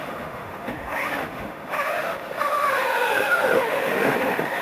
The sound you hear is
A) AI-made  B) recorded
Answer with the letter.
A